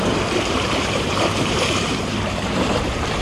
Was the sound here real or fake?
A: fake